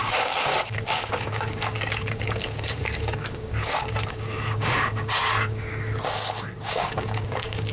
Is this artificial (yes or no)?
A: yes